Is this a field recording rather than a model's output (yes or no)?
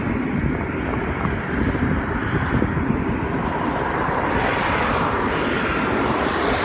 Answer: yes